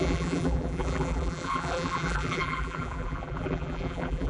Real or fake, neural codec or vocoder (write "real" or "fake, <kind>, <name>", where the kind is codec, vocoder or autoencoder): fake, vocoder, BigVGAN v2